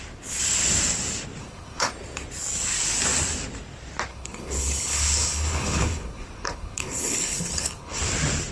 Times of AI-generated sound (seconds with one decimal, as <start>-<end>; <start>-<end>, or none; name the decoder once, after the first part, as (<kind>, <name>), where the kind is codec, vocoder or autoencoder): 1.4-1.9 (codec, HILCodec); 4.1-8.0